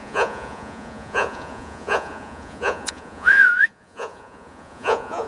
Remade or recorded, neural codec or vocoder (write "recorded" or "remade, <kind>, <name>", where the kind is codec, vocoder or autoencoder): remade, vocoder, Vocos